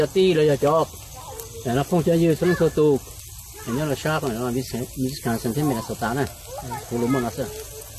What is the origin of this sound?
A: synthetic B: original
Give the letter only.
B